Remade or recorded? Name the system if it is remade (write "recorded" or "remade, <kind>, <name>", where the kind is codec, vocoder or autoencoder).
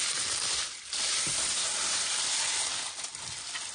recorded